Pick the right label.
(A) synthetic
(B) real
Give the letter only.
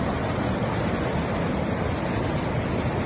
B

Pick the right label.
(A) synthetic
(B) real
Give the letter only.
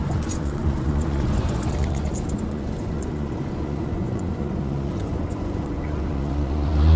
A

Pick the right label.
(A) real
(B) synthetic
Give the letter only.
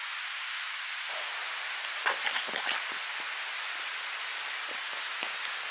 A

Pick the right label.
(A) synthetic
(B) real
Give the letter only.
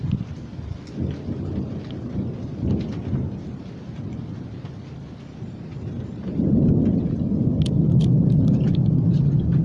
B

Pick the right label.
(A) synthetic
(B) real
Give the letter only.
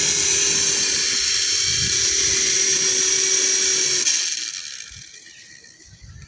B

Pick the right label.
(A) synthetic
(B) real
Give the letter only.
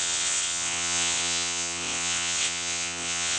A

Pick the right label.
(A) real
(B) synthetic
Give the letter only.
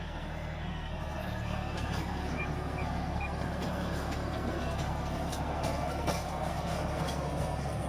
B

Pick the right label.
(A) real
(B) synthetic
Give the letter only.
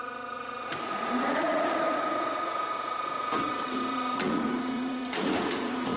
B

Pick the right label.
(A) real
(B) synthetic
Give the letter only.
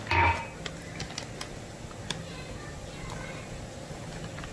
A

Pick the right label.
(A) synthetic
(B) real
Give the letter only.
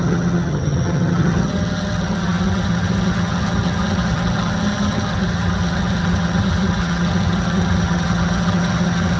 A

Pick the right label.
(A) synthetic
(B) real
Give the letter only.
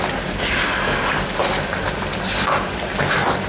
B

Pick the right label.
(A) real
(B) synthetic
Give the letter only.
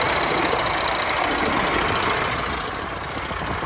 A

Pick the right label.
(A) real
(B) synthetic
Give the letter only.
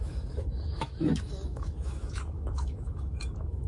B